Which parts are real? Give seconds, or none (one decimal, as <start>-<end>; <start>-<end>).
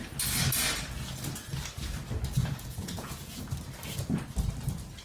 0.0-2.4; 3.5-5.0